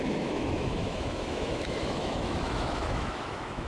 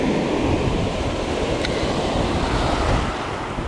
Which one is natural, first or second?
second